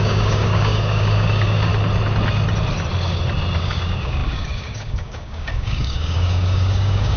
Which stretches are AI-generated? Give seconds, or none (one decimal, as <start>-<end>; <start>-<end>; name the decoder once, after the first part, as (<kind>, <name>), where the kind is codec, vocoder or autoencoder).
0.0-1.7 (codec, DAC); 3.6-7.2